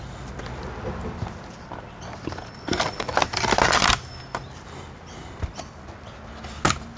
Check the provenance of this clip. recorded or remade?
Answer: recorded